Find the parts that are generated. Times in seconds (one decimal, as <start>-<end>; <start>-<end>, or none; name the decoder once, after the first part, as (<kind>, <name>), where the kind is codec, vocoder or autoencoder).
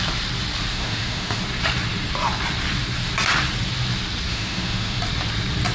0.7-1.4 (autoencoder, DAC-VAE); 4.3-5.0